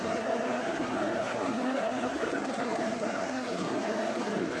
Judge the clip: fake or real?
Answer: fake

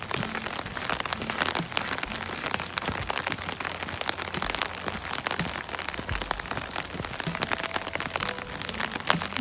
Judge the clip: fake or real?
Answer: real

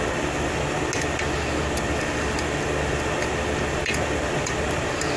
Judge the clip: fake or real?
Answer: real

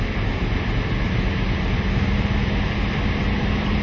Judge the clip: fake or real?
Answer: real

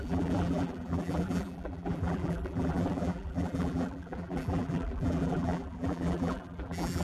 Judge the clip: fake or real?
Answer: fake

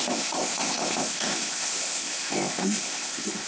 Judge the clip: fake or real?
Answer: fake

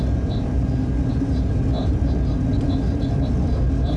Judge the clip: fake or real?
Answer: real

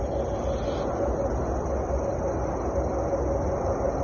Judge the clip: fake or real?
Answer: real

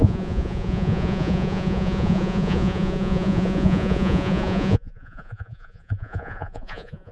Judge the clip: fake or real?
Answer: fake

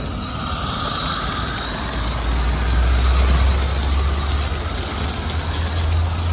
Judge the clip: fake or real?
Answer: real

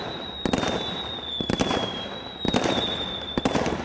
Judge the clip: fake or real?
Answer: real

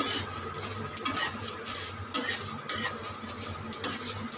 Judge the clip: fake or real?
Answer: real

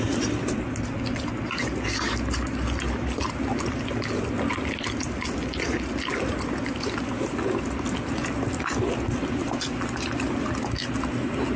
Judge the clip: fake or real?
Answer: real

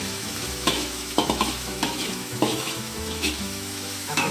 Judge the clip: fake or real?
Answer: fake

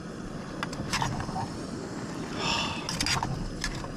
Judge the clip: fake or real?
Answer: real